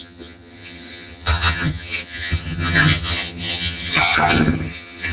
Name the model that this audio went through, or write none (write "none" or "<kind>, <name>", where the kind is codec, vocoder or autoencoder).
vocoder, HiFi-GAN